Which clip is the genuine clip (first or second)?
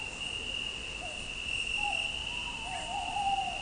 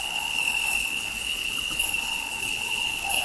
first